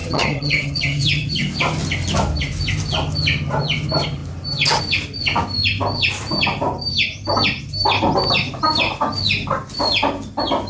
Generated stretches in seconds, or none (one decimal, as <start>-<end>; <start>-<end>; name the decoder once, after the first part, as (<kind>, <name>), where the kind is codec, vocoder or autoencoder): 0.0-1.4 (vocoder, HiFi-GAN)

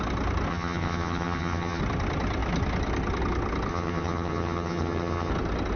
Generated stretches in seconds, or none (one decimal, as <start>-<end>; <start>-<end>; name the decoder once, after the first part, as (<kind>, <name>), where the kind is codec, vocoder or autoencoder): 0.5-1.8 (vocoder, HiFi-GAN); 3.7-5.3

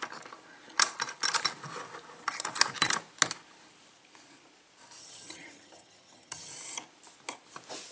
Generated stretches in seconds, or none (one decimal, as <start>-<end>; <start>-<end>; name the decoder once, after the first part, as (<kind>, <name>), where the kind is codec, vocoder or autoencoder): 5.0-6.5 (vocoder, HiFi-GAN)